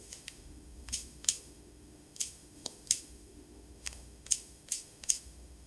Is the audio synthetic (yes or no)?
yes